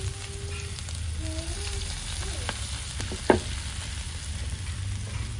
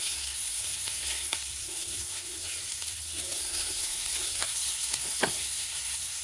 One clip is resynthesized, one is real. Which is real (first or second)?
first